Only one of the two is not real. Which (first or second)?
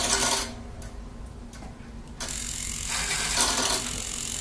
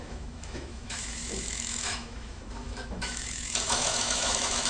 second